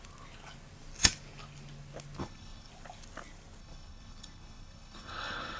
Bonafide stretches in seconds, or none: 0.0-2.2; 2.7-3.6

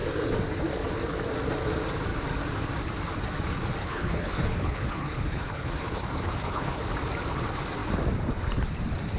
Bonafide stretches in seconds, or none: 0.0-3.8; 6.8-9.2

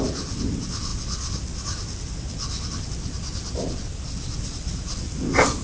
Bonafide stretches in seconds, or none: 0.0-5.6

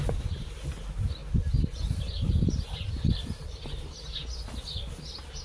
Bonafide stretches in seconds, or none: 0.0-5.4

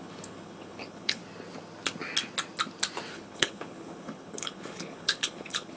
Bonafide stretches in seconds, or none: 1.2-3.1